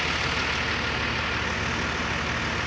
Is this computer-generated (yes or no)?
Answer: no